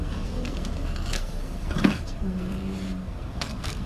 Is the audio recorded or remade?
remade